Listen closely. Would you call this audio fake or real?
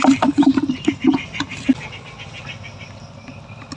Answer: fake